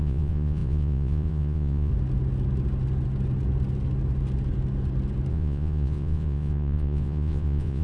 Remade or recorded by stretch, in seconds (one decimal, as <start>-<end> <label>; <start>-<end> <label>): 0.0-1.9 remade; 1.9-5.3 recorded; 5.3-7.8 remade